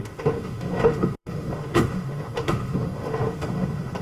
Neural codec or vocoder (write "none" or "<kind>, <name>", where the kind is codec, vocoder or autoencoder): autoencoder, DAC-VAE